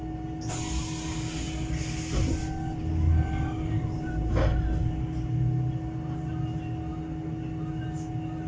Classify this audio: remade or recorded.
recorded